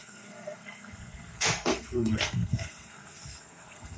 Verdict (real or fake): fake